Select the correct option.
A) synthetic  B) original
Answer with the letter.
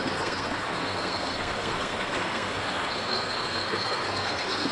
A